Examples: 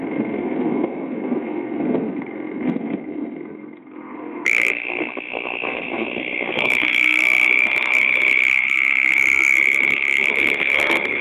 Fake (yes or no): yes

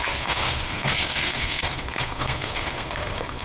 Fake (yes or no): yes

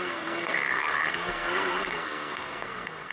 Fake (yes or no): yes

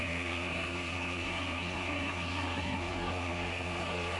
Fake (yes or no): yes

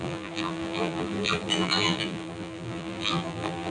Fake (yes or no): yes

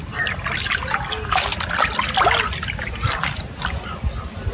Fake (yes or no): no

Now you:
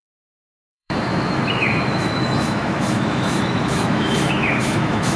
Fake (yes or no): yes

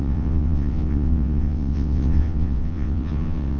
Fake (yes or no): yes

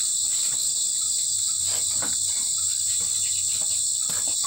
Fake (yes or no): no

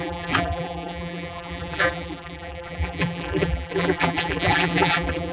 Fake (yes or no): yes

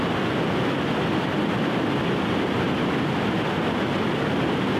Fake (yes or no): no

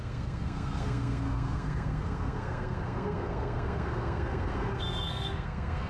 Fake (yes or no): yes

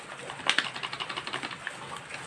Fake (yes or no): no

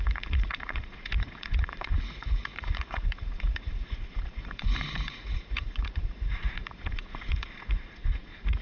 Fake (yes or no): yes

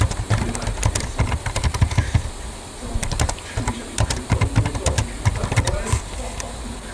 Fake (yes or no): no